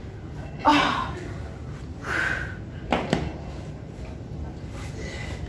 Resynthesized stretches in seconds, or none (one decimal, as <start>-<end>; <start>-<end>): none